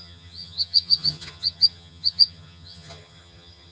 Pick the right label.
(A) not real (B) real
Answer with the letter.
A